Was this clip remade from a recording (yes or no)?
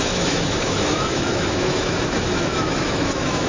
yes